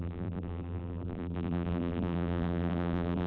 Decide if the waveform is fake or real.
fake